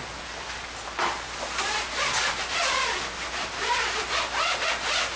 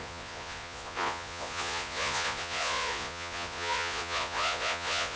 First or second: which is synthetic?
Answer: second